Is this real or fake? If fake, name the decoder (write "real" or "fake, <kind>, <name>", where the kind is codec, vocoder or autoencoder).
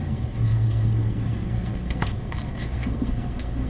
fake, codec, SNAC